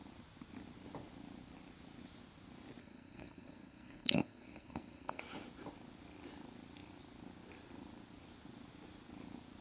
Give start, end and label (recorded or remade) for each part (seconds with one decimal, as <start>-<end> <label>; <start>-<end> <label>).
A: 0.0-2.8 recorded; 2.8-5.2 remade; 5.2-9.6 recorded